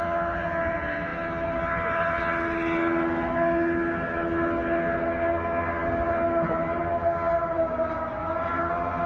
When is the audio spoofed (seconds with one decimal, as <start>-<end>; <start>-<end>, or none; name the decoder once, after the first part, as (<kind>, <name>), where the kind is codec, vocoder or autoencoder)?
none